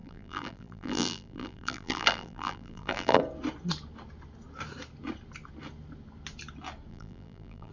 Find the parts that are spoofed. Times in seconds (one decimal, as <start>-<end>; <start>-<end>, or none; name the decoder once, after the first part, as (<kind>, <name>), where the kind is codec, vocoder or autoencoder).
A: 0.0-3.2 (vocoder, BigVGAN v2); 6.9-7.7